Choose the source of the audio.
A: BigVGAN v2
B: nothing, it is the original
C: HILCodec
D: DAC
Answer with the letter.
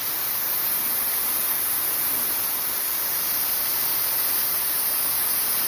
A